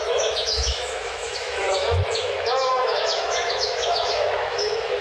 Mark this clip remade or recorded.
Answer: remade